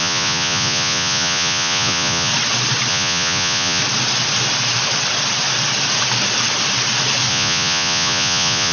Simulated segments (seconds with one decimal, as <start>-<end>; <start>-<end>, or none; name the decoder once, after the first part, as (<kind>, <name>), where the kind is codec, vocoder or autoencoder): 0.0-2.3 (vocoder, Vocos); 2.9-3.8; 7.3-8.7